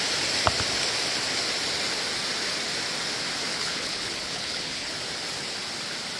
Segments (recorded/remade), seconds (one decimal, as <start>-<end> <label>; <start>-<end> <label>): 0.0-3.5 recorded; 3.5-4.9 remade; 4.9-6.2 recorded